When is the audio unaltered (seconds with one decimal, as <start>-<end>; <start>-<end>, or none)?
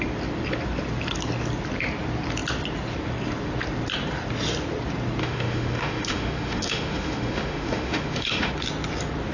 0.0-5.2; 8.5-9.3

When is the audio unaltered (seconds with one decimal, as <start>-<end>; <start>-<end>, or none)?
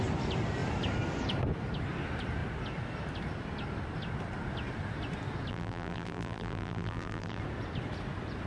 0.0-5.5; 7.4-8.5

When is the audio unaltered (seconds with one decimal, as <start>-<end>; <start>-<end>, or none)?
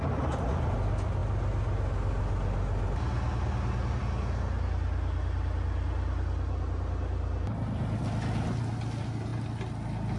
0.0-10.2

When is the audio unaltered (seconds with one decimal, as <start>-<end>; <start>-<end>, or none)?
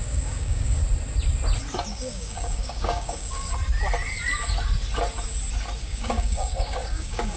0.8-1.9; 3.5-5.8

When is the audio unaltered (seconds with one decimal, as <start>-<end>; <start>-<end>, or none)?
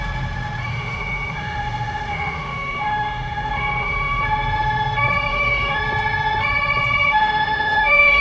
0.0-0.7; 4.2-5.3; 5.8-7.1